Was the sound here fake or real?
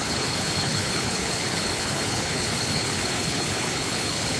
fake